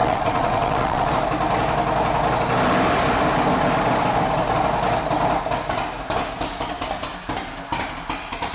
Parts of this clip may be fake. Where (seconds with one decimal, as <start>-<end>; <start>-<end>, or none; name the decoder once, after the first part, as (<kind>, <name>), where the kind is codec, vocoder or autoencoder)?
0.0-1.1 (vocoder, WaveNeXt)